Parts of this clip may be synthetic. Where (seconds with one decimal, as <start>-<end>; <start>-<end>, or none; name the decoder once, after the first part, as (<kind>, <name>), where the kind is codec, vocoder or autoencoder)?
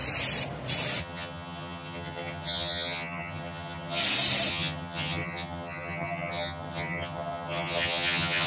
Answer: 1.0-4.0 (vocoder, HiFi-GAN); 4.5-8.5